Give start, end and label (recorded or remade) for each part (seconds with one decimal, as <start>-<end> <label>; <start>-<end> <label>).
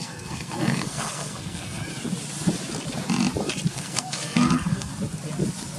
0.0-1.8 remade; 1.8-3.7 recorded; 3.7-4.9 remade; 4.9-5.8 recorded